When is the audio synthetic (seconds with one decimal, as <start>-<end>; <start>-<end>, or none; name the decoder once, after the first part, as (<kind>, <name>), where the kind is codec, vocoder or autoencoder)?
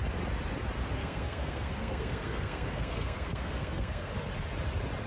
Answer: 1.0-4.1 (codec, SNAC)